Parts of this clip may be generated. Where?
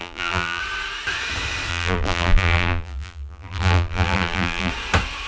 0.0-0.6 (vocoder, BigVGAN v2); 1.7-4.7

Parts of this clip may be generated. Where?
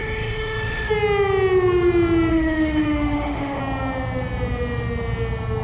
0.0-0.9 (autoencoder, DAC-VAE); 2.3-3.6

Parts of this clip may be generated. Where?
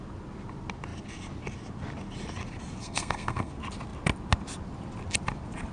2.8-3.5 (codec, SNAC)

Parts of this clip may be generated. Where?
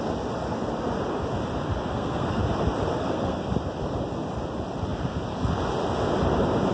1.9-2.4 (codec, SNAC); 2.9-3.4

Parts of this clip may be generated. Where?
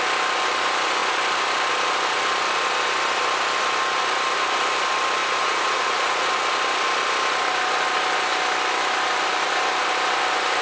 5.2-6.3 (vocoder, Vocos)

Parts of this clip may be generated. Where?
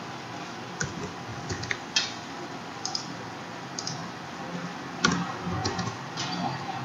none